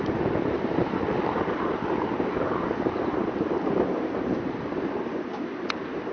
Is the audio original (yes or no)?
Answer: no